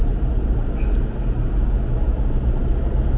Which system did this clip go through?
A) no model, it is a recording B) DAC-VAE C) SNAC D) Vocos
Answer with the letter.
A